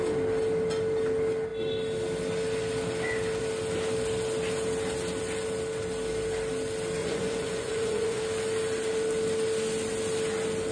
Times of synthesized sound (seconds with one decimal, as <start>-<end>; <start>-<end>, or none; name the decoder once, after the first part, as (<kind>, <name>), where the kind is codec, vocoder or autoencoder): 7.0-8.2 (vocoder, Vocos)